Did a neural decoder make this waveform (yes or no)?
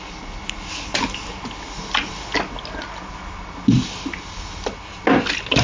no